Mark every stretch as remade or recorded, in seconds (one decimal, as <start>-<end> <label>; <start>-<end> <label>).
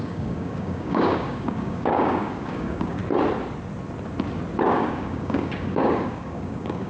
0.0-3.0 remade; 3.0-4.7 recorded; 4.7-6.9 remade